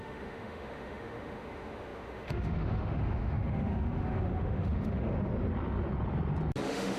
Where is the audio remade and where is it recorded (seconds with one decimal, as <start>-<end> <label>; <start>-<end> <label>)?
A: 0.0-5.3 remade; 5.3-6.6 recorded; 6.6-7.0 remade